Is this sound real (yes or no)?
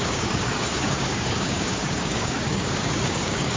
no